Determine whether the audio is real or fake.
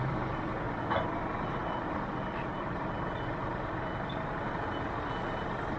real